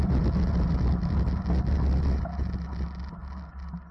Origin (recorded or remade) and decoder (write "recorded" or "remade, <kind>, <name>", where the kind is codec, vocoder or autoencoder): recorded